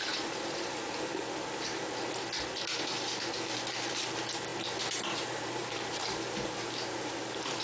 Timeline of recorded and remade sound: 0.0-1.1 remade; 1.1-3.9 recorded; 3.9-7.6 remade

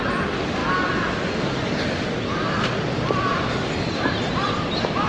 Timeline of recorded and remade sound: 0.0-3.3 recorded; 3.3-4.4 remade; 4.4-5.1 recorded